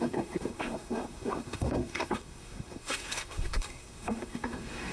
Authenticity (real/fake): fake